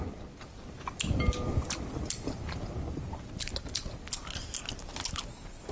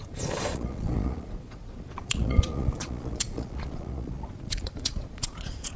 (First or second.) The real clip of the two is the first